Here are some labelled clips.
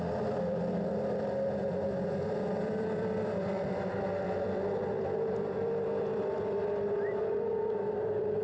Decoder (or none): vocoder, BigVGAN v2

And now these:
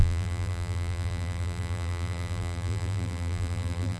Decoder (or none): vocoder, BigVGAN v2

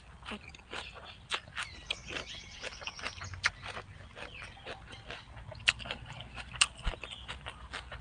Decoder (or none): none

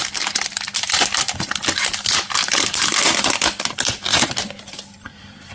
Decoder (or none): none